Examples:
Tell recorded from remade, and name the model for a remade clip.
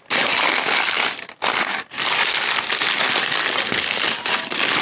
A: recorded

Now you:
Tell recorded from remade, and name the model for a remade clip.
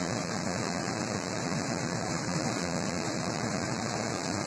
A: remade, vocoder, Vocos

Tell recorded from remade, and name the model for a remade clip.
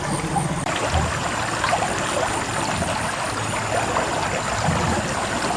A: recorded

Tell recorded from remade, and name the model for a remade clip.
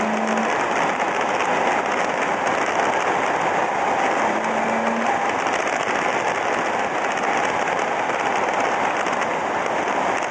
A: recorded